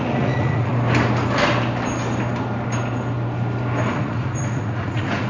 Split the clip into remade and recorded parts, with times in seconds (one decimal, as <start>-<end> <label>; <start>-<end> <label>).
0.0-0.7 remade; 0.7-3.9 recorded; 3.9-5.3 remade